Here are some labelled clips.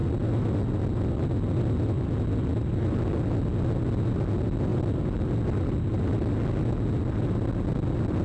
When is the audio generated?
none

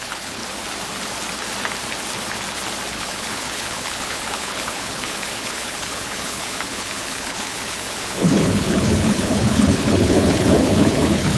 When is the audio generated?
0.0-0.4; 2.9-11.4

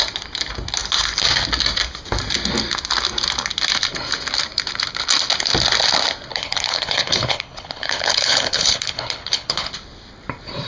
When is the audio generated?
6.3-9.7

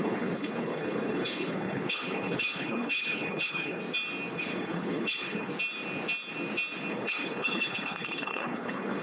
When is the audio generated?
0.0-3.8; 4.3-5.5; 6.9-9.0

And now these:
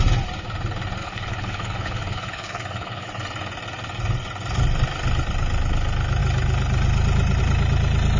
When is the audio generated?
1.0-3.1

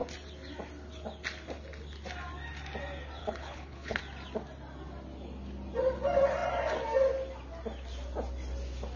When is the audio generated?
3.2-4.0